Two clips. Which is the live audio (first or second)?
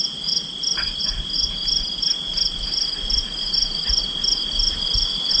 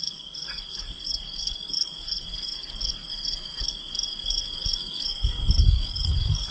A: first